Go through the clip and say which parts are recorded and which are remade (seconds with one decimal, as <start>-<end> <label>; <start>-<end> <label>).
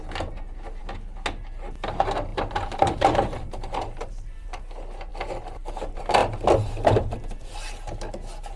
0.0-2.3 recorded; 2.3-4.6 remade; 4.6-5.1 recorded; 5.1-5.7 remade; 5.7-8.6 recorded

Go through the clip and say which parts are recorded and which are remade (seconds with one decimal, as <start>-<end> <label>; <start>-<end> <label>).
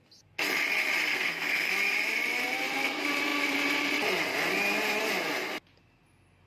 0.0-1.1 recorded; 1.1-1.7 remade; 1.7-6.5 recorded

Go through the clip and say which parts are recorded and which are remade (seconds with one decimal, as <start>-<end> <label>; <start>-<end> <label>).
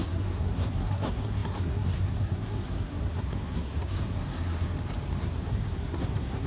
0.0-4.7 remade; 4.7-5.2 recorded; 5.2-6.5 remade